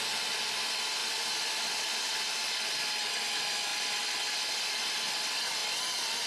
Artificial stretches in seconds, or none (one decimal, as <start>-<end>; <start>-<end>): none